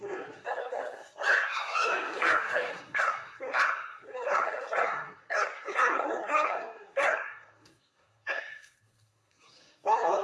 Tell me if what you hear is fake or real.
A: fake